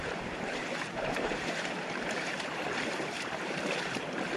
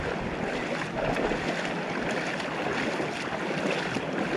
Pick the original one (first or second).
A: second